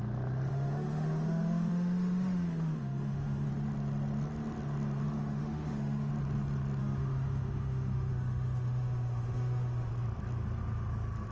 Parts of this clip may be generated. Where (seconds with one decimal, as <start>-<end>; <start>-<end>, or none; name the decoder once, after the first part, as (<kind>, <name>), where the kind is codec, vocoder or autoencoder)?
0.5-3.5 (autoencoder, DAC-VAE); 5.2-6.1; 6.8-9.9

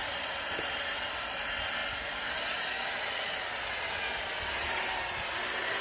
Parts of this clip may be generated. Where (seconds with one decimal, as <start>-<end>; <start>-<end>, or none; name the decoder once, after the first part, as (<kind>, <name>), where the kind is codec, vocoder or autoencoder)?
none

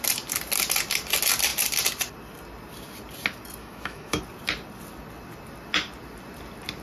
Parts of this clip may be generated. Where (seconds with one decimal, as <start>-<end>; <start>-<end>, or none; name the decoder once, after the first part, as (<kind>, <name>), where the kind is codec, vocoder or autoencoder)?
3.6-4.2 (autoencoder, DAC-VAE)